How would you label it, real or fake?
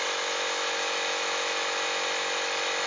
fake